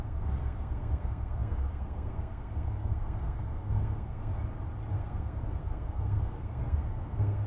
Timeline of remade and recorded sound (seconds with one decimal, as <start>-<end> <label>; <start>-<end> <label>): 0.0-4.3 remade; 4.3-4.9 recorded; 4.9-7.5 remade